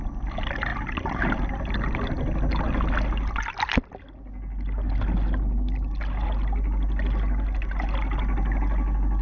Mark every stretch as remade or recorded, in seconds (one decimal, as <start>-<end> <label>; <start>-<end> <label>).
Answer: 0.0-9.2 recorded